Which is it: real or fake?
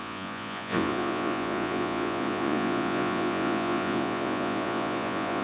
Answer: fake